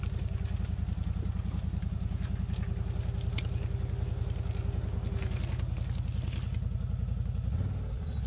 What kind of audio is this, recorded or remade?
recorded